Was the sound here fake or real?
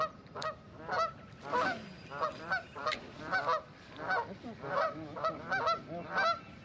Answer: real